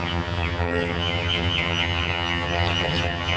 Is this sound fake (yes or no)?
yes